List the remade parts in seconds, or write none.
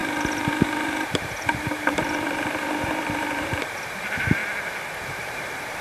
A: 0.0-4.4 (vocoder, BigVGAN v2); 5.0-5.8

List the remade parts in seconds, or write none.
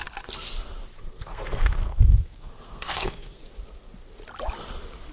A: 1.0-3.4 (codec, SNAC)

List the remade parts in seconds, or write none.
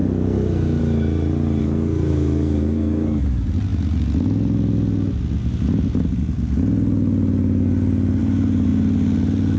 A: 0.0-0.8 (codec, SNAC); 1.6-3.2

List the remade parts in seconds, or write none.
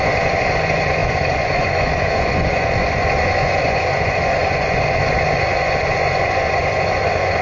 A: 0.0-7.4 (vocoder, Vocos)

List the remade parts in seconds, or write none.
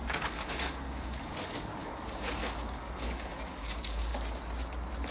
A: 0.0-4.1 (codec, DAC)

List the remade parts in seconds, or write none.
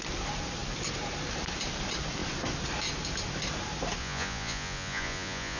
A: 4.0-5.6 (vocoder, Vocos)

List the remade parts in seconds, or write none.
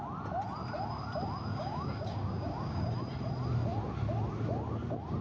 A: 1.5-2.9 (codec, DAC)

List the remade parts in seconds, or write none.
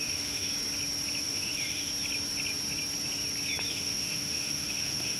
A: 0.0-0.5 (autoencoder, DAC-VAE); 1.2-1.9; 3.7-5.2